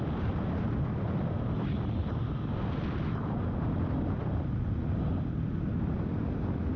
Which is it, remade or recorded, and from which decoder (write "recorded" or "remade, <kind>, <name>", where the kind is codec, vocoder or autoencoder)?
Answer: recorded